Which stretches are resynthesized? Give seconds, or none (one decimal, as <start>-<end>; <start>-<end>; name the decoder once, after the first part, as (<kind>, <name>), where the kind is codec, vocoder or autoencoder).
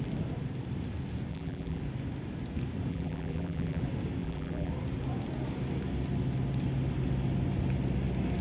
1.3-1.8 (vocoder, BigVGAN v2); 2.9-3.8; 4.2-4.7